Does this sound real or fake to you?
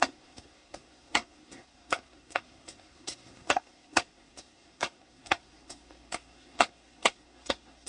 fake